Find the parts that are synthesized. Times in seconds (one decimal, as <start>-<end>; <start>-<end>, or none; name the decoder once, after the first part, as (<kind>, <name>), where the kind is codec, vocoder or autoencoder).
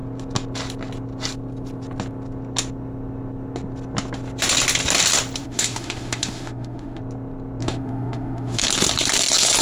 5.4-7.0 (autoencoder, DAC-VAE); 7.6-8.7